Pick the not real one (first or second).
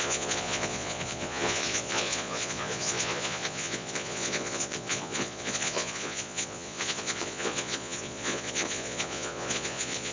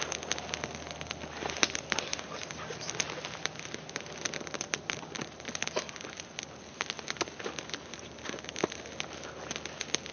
first